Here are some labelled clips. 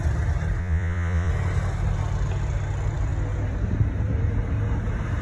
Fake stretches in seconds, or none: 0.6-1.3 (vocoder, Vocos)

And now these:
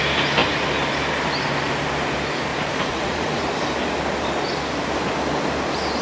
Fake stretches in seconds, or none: 2.5-3.4 (vocoder, Vocos)

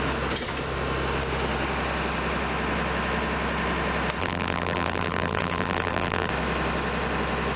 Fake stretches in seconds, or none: 4.2-6.3 (vocoder, BigVGAN v2)

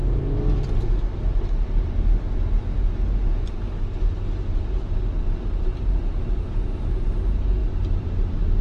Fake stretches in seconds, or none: none

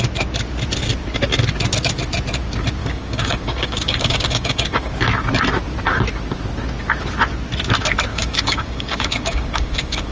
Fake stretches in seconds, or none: 2.8-4.9 (codec, DAC); 8.1-10.1

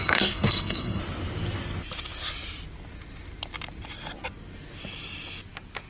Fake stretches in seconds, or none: 0.0-1.0 (codec, SNAC)

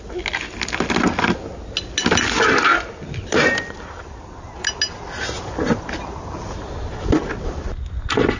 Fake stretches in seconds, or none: none